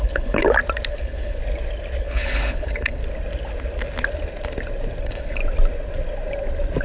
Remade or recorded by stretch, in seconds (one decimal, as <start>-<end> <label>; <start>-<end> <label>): 0.0-0.4 remade; 0.4-0.9 recorded; 0.9-1.4 remade; 1.4-2.0 recorded; 2.0-3.0 remade; 3.0-5.0 recorded; 5.0-5.4 remade; 5.4-6.8 recorded